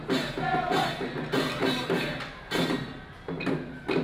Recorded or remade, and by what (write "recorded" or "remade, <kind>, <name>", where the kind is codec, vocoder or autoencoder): recorded